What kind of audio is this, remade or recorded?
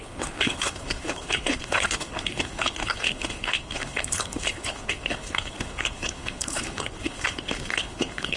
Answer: remade